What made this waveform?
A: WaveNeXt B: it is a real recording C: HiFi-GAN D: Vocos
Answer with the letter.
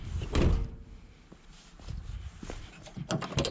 B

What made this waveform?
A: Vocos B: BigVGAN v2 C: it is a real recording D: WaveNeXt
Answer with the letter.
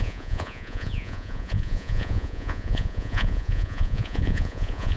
A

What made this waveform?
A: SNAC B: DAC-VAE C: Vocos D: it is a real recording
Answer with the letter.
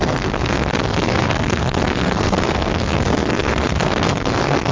A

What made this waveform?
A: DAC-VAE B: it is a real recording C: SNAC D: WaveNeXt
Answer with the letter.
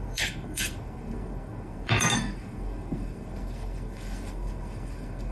C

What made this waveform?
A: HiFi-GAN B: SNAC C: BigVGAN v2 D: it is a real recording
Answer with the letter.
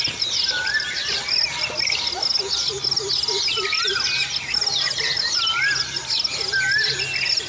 D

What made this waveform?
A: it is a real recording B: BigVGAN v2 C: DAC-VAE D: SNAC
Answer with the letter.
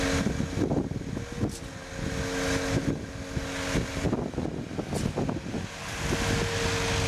A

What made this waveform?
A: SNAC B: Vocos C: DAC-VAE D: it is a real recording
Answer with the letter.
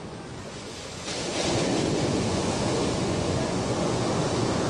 B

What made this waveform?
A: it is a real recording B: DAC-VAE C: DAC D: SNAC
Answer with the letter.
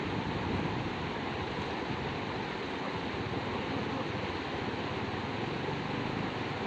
A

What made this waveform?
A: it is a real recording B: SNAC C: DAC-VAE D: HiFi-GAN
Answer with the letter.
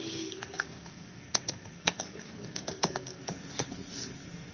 B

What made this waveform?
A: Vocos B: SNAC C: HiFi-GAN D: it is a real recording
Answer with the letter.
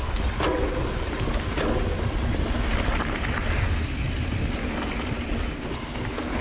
D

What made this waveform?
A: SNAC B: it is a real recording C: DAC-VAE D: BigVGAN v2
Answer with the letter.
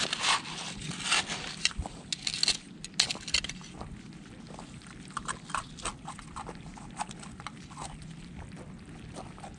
B